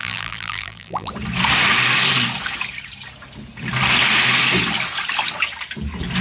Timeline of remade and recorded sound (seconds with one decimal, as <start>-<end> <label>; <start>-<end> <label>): 0.0-1.1 remade; 1.1-6.2 recorded